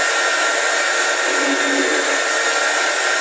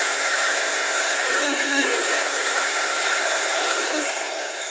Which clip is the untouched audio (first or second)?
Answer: first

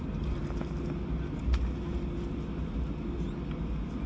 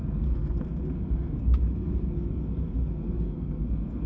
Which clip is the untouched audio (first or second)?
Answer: first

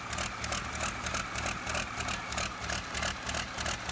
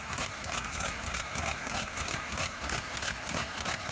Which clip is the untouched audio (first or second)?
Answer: first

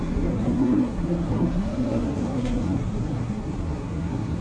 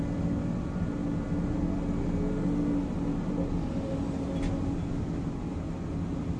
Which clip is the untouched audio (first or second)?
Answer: second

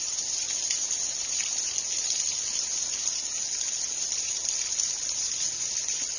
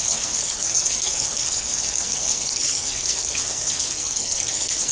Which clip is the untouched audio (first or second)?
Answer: first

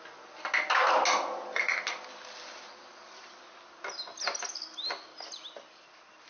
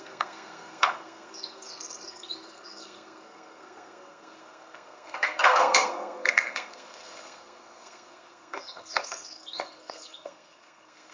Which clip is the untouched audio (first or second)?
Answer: first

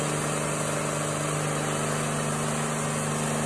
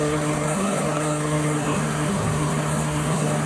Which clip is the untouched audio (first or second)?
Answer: first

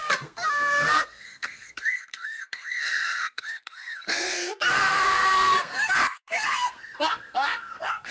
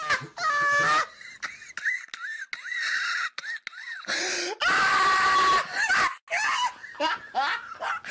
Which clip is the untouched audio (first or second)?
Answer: second